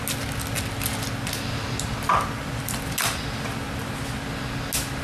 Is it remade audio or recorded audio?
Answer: recorded